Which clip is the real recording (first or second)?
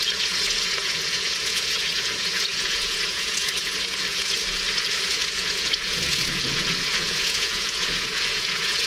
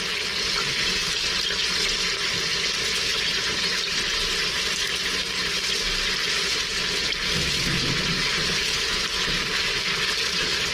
second